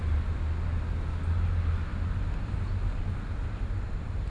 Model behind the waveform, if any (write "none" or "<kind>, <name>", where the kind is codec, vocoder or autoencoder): none